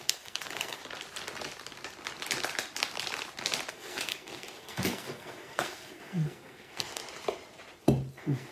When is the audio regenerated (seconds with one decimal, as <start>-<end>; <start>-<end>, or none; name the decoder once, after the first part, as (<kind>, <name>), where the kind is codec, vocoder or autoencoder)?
0.0-0.8 (codec, SNAC); 3.7-7.0; 8.1-8.5